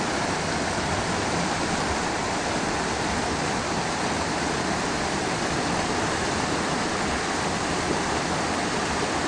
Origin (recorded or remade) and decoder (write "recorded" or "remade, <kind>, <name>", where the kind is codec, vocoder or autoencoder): recorded